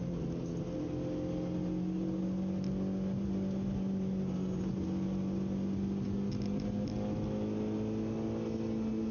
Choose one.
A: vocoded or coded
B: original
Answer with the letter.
B